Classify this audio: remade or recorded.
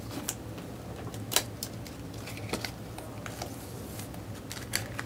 recorded